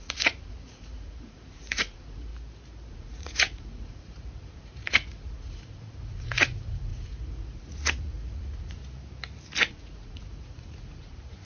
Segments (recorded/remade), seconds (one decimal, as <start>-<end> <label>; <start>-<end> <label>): 0.0-2.3 remade; 2.3-2.9 recorded; 2.9-8.8 remade; 8.8-9.7 recorded; 9.7-11.5 remade

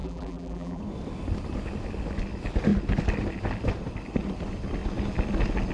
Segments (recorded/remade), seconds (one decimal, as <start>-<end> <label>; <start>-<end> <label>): 0.0-0.8 remade; 0.8-5.7 recorded

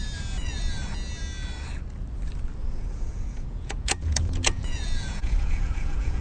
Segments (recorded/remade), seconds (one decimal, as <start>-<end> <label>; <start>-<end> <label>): 0.0-2.6 recorded; 2.6-6.2 remade

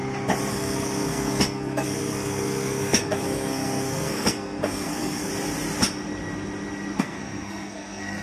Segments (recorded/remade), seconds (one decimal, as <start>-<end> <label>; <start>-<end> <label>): 0.0-0.5 recorded; 0.5-5.3 remade; 5.3-7.0 recorded; 7.0-8.2 remade

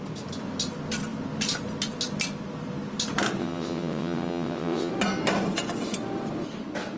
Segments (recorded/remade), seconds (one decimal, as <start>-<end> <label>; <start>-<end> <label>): 0.0-3.4 recorded; 3.4-4.9 remade; 4.9-7.0 recorded

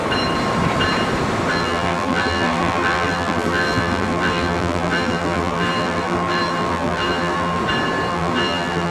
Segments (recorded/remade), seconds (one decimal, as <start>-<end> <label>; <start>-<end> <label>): 0.0-1.5 recorded; 1.5-7.6 remade; 7.6-8.1 recorded; 8.1-8.9 remade

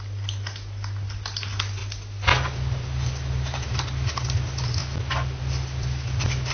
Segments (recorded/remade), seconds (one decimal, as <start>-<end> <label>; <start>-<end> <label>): 0.0-6.5 recorded

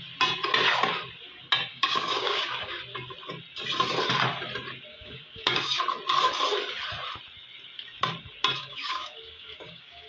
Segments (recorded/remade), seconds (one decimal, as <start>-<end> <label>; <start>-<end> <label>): 0.0-1.7 recorded; 1.7-2.8 remade; 2.8-4.9 recorded; 4.9-5.8 remade; 5.8-8.6 recorded; 8.6-10.1 remade